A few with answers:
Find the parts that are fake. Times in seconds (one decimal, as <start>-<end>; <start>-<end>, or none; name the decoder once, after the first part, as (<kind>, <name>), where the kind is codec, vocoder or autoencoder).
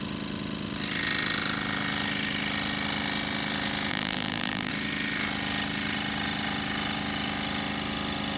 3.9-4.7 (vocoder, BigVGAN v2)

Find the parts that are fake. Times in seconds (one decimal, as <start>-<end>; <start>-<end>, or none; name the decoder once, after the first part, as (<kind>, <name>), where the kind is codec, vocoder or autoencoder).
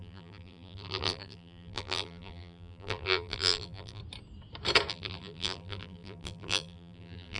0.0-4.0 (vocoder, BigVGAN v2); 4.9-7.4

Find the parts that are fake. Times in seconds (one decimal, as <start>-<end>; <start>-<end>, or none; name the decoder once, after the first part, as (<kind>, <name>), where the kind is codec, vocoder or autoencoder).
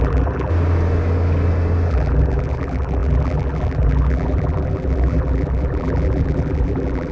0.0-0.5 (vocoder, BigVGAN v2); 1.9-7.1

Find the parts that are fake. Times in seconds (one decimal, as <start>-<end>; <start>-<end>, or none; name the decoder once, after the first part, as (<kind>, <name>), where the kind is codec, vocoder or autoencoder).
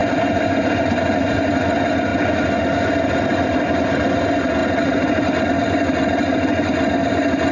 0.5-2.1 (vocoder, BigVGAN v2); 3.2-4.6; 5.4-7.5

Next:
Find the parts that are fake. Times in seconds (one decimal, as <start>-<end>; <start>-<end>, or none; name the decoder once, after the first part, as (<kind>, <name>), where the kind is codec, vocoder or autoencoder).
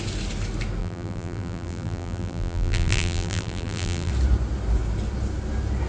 0.8-4.1 (vocoder, BigVGAN v2)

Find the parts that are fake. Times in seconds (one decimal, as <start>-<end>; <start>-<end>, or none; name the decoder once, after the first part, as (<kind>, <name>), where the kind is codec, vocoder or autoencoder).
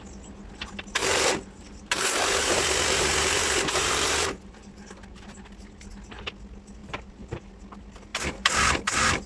1.0-5.7 (vocoder, BigVGAN v2); 6.8-7.5; 8.1-8.7